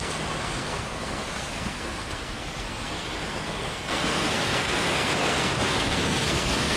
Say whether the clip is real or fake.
fake